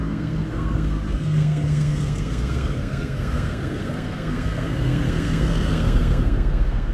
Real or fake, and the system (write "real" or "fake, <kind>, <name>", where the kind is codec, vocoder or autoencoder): fake, codec, SNAC